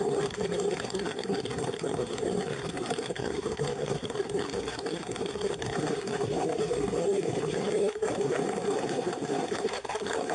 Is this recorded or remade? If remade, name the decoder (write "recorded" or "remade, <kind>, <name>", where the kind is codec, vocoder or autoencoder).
remade, codec, SNAC